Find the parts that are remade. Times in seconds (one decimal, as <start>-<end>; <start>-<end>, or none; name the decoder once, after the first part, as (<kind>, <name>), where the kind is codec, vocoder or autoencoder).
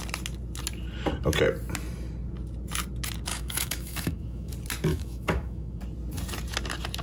3.3-4.5 (autoencoder, DAC-VAE); 4.9-5.8